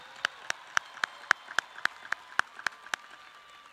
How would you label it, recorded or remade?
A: recorded